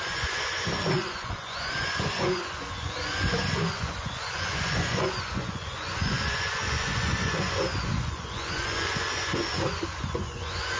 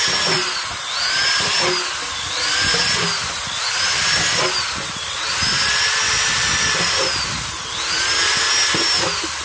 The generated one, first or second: first